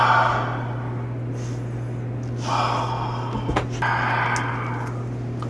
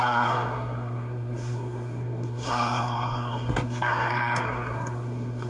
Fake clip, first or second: second